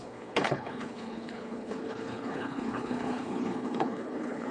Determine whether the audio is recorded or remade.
remade